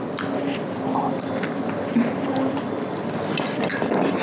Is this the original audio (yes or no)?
yes